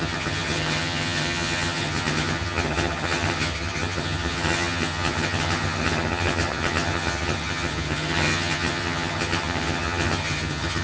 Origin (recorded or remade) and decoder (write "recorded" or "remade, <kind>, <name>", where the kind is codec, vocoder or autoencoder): remade, vocoder, HiFi-GAN